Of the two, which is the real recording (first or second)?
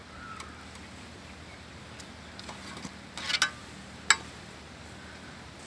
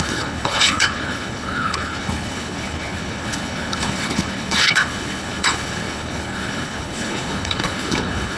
first